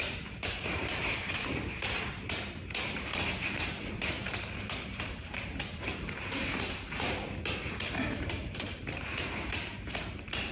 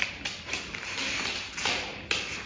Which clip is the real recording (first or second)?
second